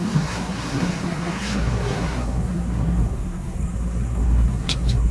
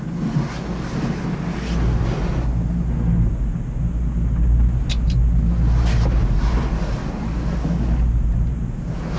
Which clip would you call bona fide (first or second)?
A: second